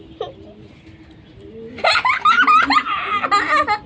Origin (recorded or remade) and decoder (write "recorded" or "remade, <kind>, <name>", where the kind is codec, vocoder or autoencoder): recorded